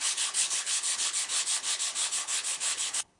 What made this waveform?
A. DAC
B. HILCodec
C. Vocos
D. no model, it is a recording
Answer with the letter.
B